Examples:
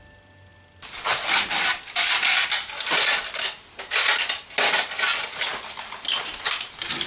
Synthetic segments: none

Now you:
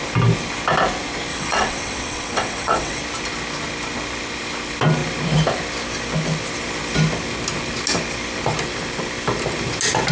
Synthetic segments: 1.3-3.0 (vocoder, WaveNeXt)